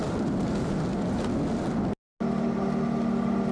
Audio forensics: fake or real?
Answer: real